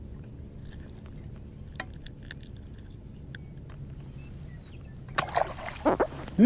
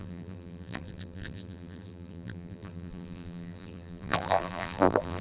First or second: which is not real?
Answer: second